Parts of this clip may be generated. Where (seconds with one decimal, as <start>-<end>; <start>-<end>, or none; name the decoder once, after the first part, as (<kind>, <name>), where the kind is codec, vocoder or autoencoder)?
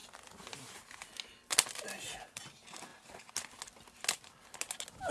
none